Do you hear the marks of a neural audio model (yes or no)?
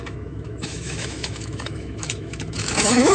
yes